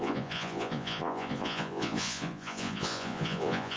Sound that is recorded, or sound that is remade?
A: remade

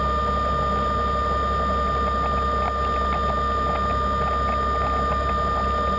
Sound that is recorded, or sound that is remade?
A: recorded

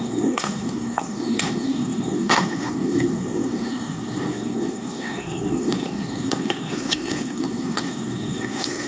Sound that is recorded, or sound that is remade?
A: remade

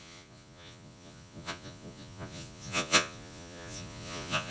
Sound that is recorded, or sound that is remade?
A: remade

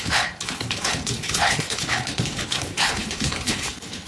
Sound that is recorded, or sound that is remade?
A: remade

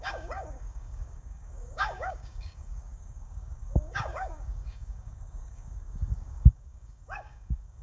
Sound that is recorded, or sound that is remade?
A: remade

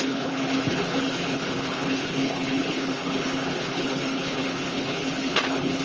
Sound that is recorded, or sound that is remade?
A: remade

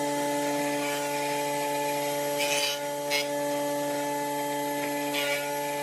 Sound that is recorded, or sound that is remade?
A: recorded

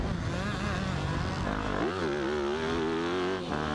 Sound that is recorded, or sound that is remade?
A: recorded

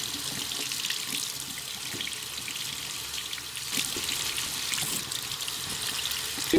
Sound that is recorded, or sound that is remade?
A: recorded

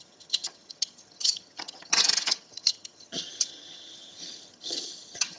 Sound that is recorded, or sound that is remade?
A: remade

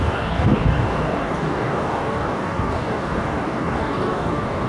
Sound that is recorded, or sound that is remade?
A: remade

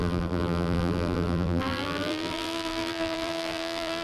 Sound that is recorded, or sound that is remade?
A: remade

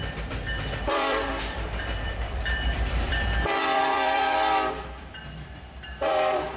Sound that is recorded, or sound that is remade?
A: remade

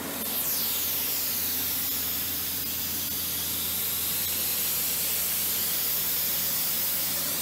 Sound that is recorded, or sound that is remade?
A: recorded